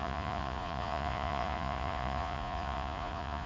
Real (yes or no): no